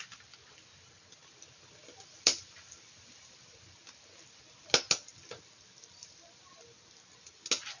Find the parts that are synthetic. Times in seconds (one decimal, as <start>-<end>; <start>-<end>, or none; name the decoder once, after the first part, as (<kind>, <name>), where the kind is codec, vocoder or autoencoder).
1.8-3.8 (vocoder, BigVGAN v2)

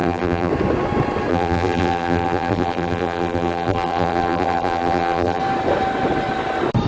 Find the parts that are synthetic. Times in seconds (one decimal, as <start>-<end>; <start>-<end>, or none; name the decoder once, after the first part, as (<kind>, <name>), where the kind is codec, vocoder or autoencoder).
0.0-0.5 (vocoder, BigVGAN v2); 1.3-5.4

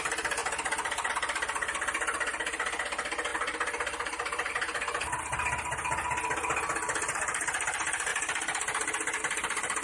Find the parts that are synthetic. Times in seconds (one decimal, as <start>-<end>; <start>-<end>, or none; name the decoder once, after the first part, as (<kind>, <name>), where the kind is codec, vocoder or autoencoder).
0.4-1.1 (vocoder, BigVGAN v2); 3.3-4.5

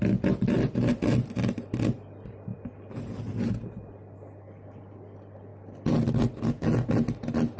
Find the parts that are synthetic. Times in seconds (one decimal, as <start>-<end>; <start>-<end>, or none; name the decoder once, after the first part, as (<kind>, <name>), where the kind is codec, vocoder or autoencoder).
none

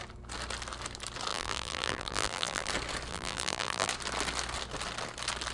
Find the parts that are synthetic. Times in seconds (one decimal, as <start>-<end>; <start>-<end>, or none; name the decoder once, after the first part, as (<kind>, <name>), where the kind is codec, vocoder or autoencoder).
1.3-2.7 (vocoder, BigVGAN v2); 3.1-3.9

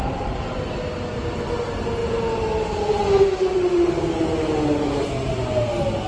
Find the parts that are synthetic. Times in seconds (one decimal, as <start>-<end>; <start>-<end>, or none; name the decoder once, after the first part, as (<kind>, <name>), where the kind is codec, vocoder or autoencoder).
0.0-0.6 (vocoder, BigVGAN v2)

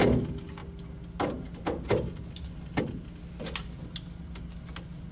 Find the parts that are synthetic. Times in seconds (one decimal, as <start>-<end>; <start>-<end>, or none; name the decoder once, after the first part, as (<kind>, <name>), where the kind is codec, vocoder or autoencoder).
none

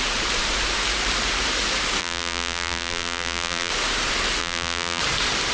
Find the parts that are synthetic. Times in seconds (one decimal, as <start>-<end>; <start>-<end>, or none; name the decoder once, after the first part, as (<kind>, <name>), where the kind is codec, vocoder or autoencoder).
2.0-3.7 (vocoder, BigVGAN v2); 4.4-5.0